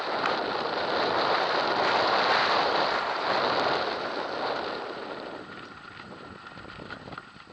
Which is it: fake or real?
fake